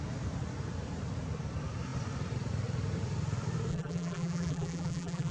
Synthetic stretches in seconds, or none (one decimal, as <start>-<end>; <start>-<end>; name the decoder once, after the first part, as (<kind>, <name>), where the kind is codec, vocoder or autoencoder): 3.7-5.3 (vocoder, BigVGAN v2)